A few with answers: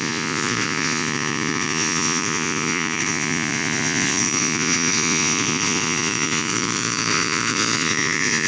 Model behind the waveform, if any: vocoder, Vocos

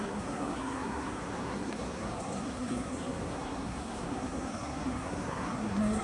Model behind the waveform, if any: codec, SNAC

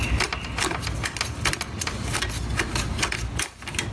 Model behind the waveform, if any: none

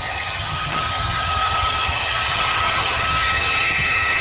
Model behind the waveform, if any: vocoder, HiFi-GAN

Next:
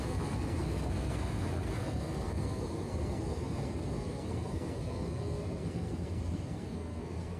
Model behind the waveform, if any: codec, SNAC